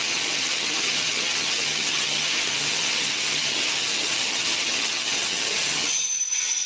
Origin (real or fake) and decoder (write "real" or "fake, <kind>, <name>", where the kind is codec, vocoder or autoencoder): fake, vocoder, HiFi-GAN